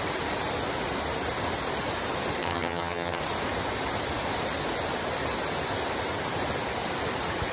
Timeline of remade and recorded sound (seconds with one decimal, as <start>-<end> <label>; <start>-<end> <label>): 0.0-2.4 recorded; 2.4-3.2 remade; 3.2-7.5 recorded